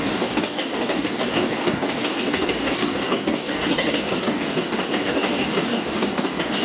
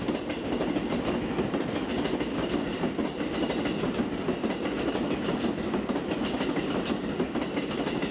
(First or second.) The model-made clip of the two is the first